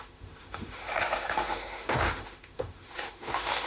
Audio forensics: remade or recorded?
remade